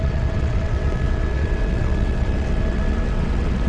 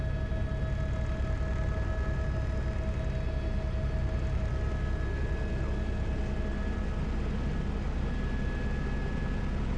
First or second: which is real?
second